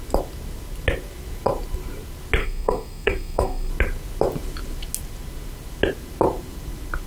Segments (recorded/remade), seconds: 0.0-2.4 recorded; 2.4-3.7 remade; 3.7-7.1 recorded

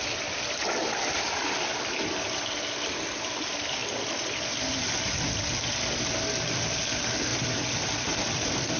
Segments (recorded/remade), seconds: 0.0-8.8 recorded